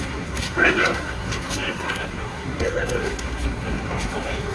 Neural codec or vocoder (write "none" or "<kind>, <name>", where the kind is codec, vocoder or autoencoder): codec, SNAC